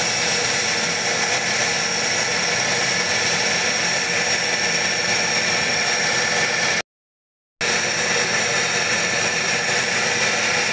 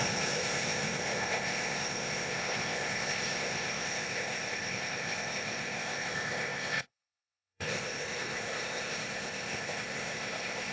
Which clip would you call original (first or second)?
first